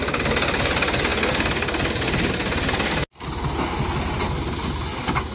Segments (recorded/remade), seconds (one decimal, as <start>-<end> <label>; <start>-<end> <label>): 0.0-5.3 recorded